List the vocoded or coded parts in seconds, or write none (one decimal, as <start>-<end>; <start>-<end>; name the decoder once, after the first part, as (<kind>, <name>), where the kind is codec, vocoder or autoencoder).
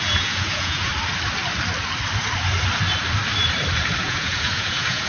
0.0-0.9 (vocoder, Vocos); 4.0-5.1